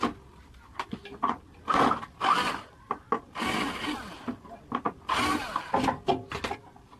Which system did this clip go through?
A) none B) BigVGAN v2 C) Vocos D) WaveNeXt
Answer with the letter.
B